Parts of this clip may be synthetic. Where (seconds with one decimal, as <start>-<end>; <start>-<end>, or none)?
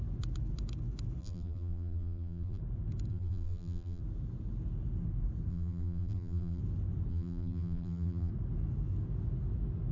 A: 1.2-2.6; 3.1-4.0; 5.5-6.6; 7.1-8.3